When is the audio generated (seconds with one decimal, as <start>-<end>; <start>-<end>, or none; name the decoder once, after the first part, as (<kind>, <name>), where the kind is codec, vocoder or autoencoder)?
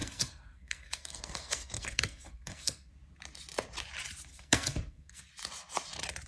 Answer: 0.0-2.9 (codec, SNAC); 4.3-5.3